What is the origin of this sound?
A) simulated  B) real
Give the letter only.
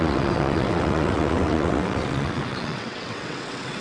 A